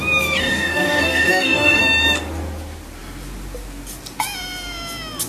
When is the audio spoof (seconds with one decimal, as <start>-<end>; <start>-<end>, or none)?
0.4-1.8